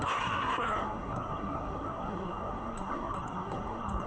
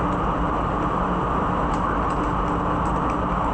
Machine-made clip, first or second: first